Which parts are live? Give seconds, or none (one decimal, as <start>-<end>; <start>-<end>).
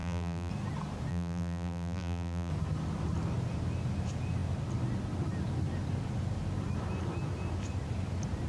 0.5-1.1; 2.5-8.5